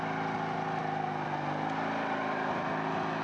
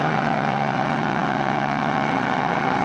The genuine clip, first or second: first